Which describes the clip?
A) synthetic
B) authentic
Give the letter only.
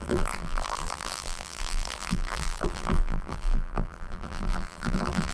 A